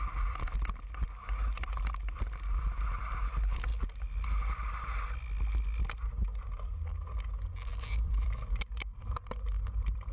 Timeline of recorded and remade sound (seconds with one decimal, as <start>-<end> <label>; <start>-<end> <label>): 0.0-7.7 recorded; 7.7-10.1 remade